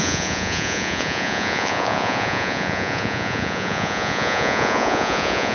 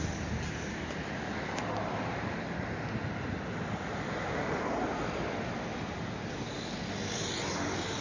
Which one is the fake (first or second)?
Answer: first